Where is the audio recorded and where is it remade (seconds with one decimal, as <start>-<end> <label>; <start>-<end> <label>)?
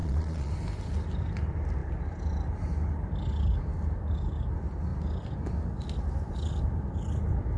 0.0-0.5 remade; 0.5-7.6 recorded